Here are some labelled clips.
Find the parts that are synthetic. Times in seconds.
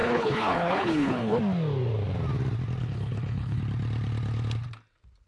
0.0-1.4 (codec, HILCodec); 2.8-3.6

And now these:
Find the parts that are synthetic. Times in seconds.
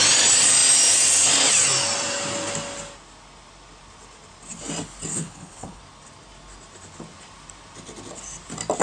5.1-5.8 (codec, HILCodec)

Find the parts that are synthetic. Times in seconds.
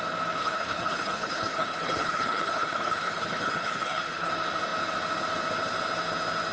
0.4-4.3 (codec, HILCodec)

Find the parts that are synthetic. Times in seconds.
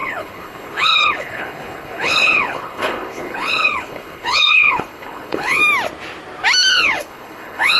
0.0-5.6 (codec, HILCodec); 6.7-7.8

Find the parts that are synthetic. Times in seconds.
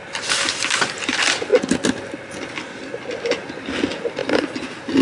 none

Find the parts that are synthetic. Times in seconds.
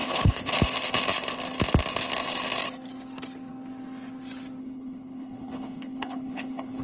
0.0-0.5 (codec, HILCodec); 4.6-6.8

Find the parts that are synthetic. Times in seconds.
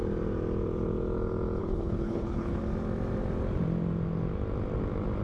1.6-2.6 (codec, HILCodec)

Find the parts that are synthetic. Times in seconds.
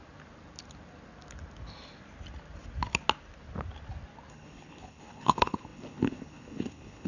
4.3-7.1 (codec, HILCodec)